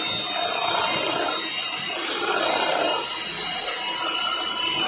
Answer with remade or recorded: recorded